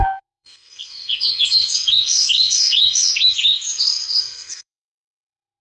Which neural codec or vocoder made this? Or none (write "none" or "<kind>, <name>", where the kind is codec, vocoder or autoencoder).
codec, SNAC